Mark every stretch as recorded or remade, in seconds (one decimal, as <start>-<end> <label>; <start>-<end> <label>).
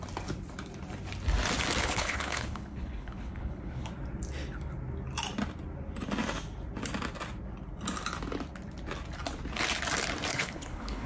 0.0-1.8 recorded; 1.8-3.9 remade; 3.9-10.3 recorded; 10.3-11.1 remade